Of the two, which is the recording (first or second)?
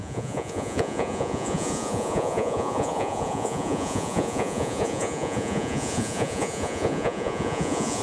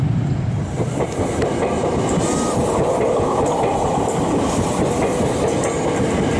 second